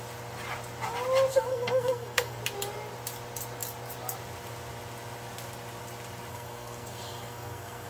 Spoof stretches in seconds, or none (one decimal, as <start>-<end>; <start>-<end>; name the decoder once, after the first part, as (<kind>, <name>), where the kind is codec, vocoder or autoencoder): 1.3-2.4 (codec, SNAC); 6.3-7.9